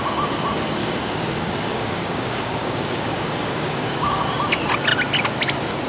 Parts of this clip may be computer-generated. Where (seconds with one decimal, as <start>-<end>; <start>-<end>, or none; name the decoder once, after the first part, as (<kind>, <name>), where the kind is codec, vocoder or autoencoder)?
0.8-4.3 (codec, DAC)